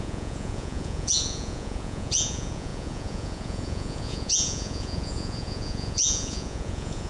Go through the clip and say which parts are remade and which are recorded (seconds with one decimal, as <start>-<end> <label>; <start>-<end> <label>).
0.0-7.1 remade